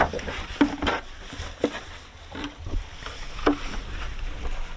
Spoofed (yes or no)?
no